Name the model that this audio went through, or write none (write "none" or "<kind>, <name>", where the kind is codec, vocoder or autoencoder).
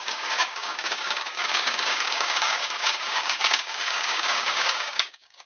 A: codec, DAC